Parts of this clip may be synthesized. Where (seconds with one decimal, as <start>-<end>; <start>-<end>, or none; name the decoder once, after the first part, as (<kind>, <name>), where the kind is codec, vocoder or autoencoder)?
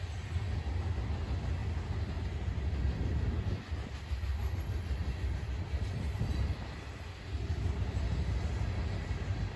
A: none